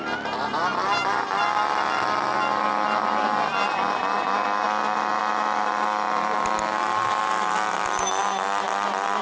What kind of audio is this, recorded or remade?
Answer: recorded